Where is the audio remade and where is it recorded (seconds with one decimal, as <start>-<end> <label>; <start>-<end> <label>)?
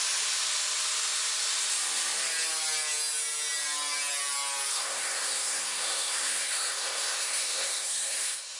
0.0-4.7 recorded; 4.7-8.6 remade